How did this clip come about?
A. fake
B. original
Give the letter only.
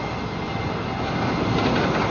B